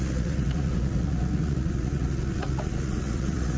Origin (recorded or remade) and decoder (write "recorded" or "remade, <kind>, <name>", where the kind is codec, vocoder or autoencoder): remade, vocoder, Vocos